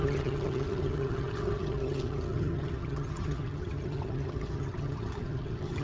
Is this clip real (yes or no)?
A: no